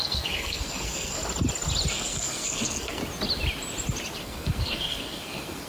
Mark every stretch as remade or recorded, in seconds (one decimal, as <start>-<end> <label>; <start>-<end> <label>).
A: 0.0-1.2 remade; 1.2-1.9 recorded; 1.9-3.0 remade; 3.0-4.2 recorded; 4.2-5.7 remade